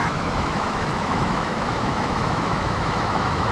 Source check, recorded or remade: remade